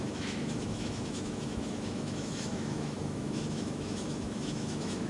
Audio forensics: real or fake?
fake